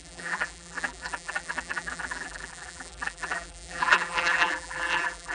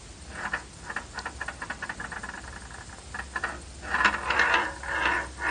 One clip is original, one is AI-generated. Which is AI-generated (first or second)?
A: first